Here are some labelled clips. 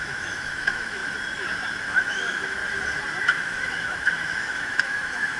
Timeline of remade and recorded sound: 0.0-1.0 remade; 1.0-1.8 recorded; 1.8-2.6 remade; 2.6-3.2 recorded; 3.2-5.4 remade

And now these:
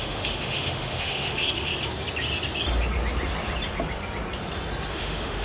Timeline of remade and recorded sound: 0.0-1.7 remade; 1.7-4.9 recorded; 4.9-5.4 remade

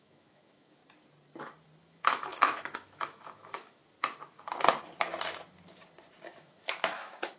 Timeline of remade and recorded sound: 0.0-0.8 remade; 0.8-1.8 recorded; 1.8-3.8 remade; 3.8-6.4 recorded; 6.4-7.4 remade